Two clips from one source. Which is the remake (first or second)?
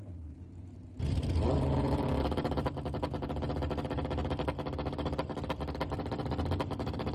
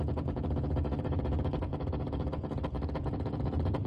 second